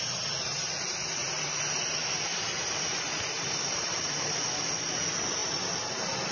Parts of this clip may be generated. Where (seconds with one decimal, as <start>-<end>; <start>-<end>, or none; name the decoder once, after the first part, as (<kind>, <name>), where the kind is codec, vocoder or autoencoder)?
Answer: 2.3-3.5 (vocoder, BigVGAN v2)